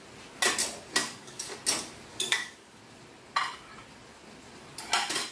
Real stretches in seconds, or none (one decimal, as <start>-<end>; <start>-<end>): 0.0-1.0; 1.6-2.1; 2.8-5.3